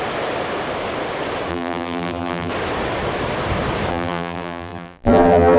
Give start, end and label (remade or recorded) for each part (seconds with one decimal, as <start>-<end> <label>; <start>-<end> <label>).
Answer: 0.0-1.5 recorded; 1.5-2.5 remade; 2.5-3.9 recorded; 3.9-5.6 remade